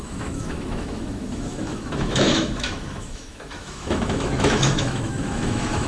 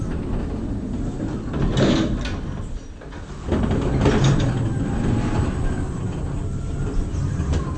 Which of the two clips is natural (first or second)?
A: second